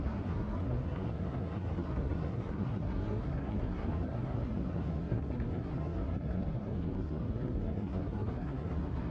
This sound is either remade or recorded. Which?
remade